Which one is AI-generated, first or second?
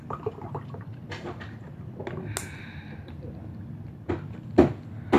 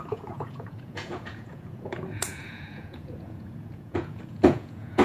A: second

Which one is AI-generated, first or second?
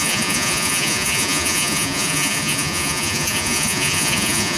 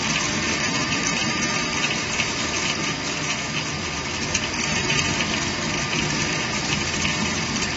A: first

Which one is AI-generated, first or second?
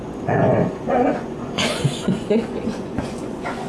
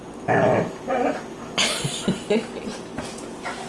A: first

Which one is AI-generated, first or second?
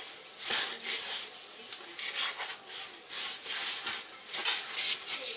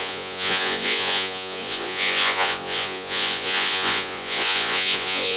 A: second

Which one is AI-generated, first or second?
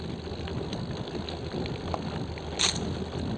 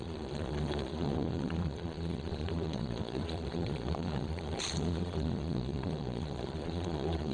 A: second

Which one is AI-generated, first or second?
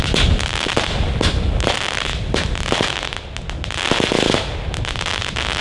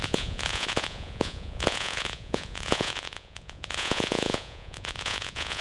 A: second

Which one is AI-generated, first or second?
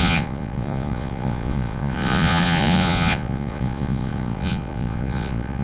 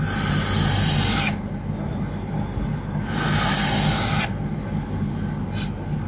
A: first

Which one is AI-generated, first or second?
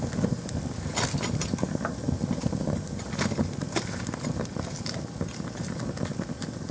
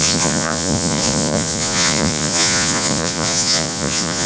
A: second